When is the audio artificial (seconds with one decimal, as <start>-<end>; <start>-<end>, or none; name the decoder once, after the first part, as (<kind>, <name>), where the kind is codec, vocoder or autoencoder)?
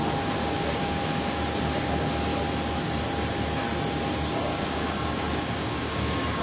0.4-1.5 (codec, DAC); 4.5-6.4